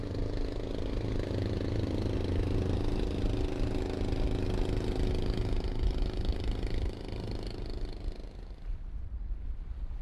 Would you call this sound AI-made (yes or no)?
no